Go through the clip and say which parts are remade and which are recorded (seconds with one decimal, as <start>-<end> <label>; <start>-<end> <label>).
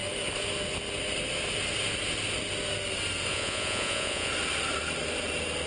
0.0-3.3 recorded; 3.3-4.3 remade; 4.3-5.7 recorded